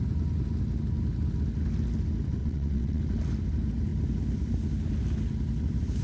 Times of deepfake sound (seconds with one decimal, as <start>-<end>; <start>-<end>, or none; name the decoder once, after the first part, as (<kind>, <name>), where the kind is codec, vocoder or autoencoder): 2.4-3.0 (vocoder, WaveNeXt)